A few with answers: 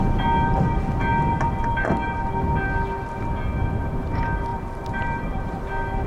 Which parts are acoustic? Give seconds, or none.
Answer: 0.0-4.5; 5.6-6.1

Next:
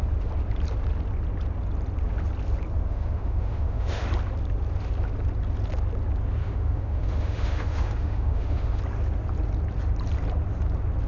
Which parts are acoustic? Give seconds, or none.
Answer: 0.0-2.9; 4.0-6.4; 8.8-11.1

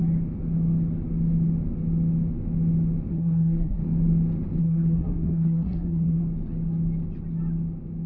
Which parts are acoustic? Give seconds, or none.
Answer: 0.0-3.1; 3.8-4.6; 6.2-8.1

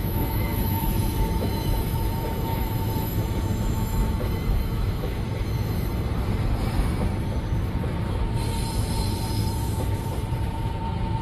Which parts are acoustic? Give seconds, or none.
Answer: 5.9-11.2

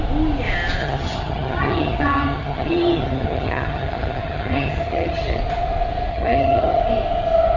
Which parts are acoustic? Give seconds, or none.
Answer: 0.0-0.8; 5.4-6.1; 6.8-7.6

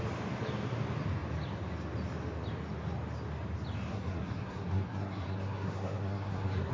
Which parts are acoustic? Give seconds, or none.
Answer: 0.0-3.9

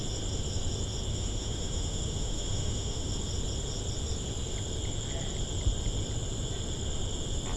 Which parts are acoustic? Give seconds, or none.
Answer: 0.0-1.1; 3.1-7.6